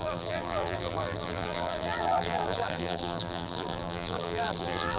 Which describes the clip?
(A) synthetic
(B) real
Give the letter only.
A